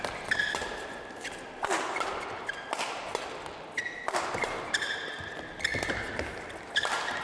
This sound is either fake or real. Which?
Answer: real